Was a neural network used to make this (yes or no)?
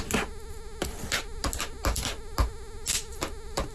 no